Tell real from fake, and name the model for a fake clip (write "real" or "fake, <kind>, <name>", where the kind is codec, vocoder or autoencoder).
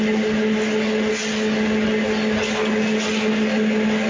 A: real